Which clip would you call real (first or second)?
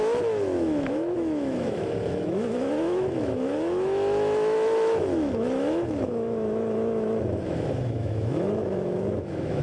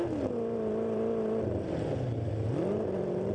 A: second